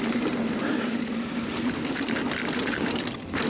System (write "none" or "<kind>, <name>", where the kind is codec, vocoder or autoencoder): vocoder, BigVGAN v2